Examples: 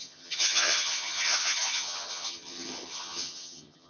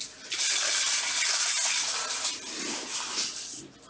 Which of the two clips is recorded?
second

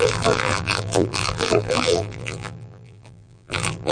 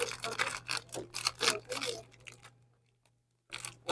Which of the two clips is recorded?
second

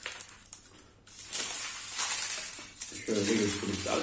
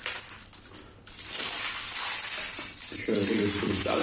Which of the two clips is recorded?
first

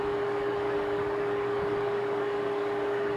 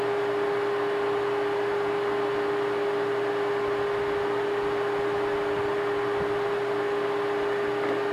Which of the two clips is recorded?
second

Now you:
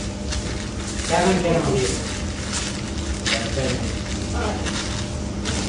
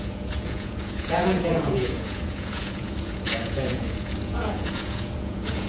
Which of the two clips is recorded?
first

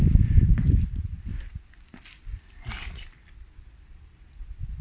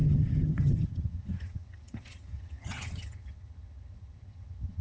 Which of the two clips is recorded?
first